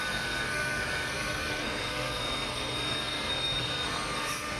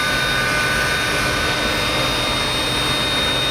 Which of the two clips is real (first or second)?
second